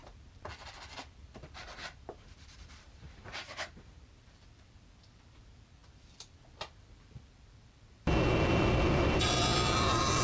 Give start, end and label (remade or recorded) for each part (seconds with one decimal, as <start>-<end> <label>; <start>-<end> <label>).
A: 0.0-1.6 recorded; 1.6-4.0 remade; 4.0-10.2 recorded